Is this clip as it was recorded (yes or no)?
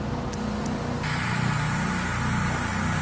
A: yes